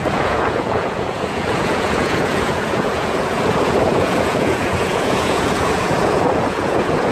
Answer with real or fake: fake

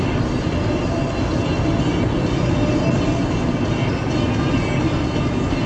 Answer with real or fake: real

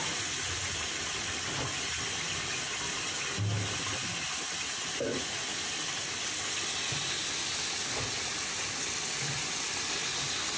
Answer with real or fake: real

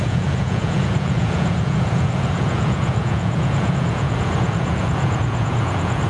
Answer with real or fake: fake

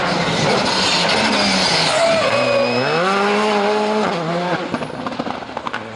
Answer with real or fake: real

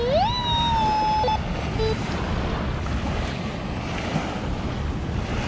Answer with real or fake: real